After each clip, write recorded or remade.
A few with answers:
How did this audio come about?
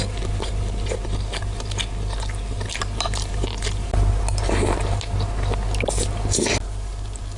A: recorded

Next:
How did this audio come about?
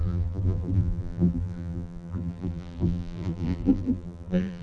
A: remade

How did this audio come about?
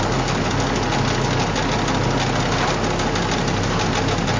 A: recorded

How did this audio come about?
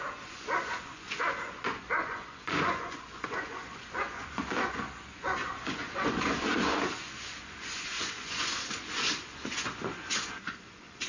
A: remade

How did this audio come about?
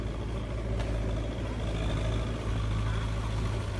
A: recorded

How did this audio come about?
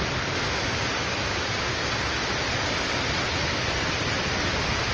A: recorded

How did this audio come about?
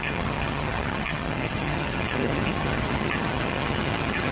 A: remade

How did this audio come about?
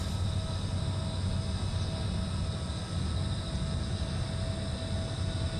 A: recorded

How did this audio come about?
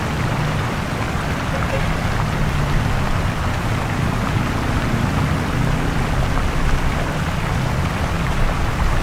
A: recorded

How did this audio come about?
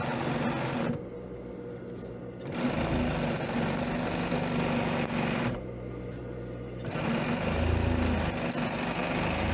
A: recorded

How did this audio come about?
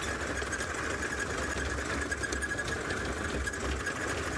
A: recorded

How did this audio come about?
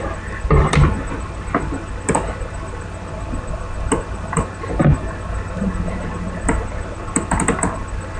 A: recorded